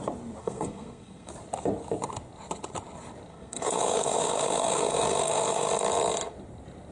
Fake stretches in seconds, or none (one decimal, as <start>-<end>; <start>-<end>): 0.4-1.3; 3.3-5.7